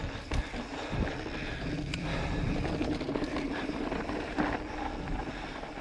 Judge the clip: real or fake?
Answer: real